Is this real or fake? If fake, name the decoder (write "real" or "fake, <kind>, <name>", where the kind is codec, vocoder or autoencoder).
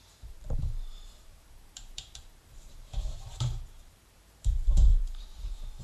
fake, vocoder, BigVGAN v2